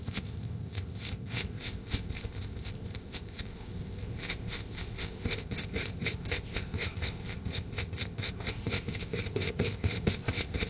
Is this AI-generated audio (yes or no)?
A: yes